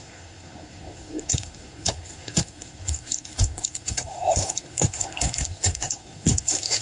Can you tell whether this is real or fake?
fake